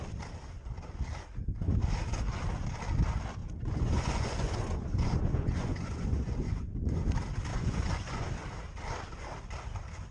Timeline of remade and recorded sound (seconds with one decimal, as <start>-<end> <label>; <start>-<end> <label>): 0.0-3.4 recorded; 3.4-7.0 remade; 7.0-7.5 recorded; 7.5-8.3 remade; 8.3-10.1 recorded